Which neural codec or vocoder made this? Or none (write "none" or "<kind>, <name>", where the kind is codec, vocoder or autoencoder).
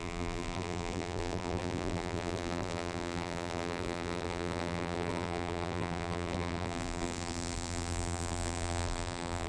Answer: vocoder, BigVGAN v2